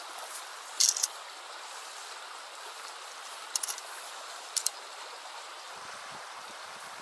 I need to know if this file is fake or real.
fake